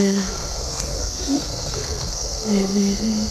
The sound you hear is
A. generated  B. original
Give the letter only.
A